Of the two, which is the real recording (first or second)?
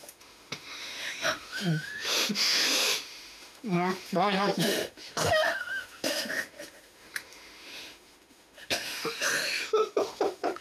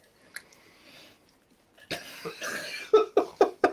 second